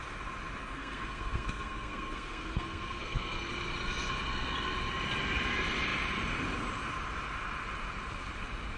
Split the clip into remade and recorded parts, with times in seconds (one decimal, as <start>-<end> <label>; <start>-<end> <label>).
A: 0.0-0.6 recorded; 0.6-3.5 remade; 3.5-8.8 recorded